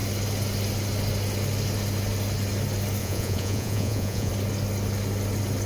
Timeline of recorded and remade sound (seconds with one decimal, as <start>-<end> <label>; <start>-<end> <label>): 0.0-3.0 recorded; 3.0-4.3 remade; 4.3-5.7 recorded